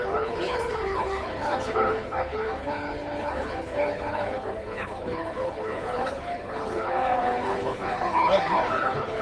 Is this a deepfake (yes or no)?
yes